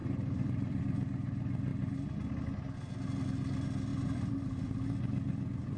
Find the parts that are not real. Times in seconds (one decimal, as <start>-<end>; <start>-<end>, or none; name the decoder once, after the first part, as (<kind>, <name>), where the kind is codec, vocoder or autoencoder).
0.0-0.8 (vocoder, BigVGAN v2); 3.9-4.7